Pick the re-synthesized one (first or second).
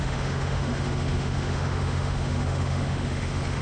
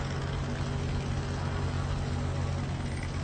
first